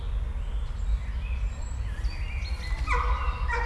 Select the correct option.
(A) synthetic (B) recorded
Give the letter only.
B